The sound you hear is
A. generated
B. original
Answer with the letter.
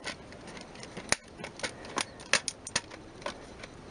B